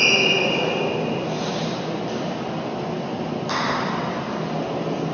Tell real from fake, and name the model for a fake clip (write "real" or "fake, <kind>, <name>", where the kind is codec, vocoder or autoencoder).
real